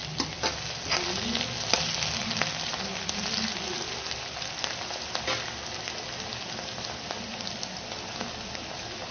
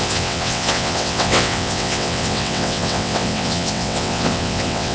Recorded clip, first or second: first